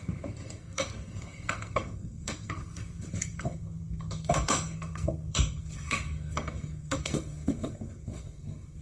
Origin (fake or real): fake